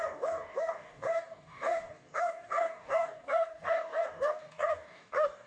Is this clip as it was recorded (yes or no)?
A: no